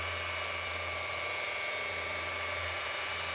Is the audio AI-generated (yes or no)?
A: yes